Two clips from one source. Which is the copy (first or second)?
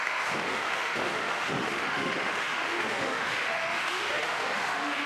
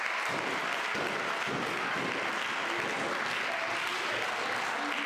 first